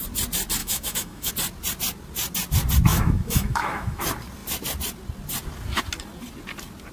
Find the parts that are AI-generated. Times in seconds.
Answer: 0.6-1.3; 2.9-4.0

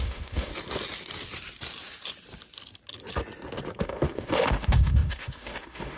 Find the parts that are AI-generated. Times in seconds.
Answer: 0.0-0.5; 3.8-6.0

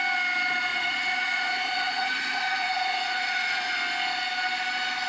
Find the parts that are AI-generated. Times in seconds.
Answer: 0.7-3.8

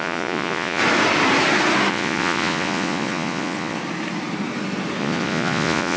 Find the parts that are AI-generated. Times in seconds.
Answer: 0.0-0.8; 1.9-3.8; 5.0-6.0

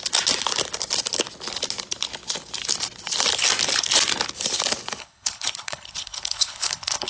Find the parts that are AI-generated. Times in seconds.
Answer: 5.0-7.1

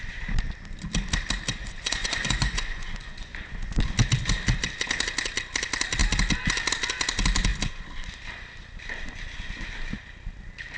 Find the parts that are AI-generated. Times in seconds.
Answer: 1.6-3.8